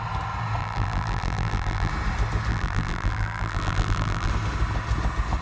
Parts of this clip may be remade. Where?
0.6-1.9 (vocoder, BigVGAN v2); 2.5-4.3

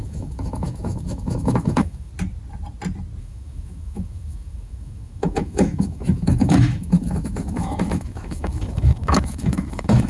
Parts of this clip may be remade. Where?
0.0-2.1 (autoencoder, DAC-VAE); 3.2-10.1

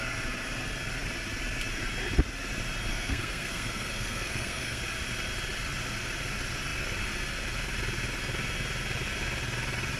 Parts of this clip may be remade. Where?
2.9-4.8 (codec, SNAC)

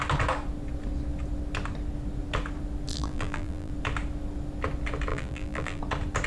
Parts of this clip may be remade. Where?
2.9-3.7 (vocoder, BigVGAN v2); 5.1-5.8

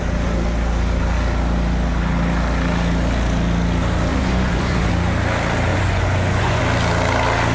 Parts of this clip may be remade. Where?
4.1-4.9 (vocoder, Vocos); 5.7-6.6

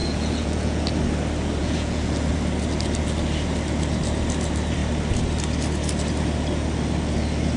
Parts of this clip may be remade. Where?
0.0-0.8 (vocoder, Vocos); 1.6-2.1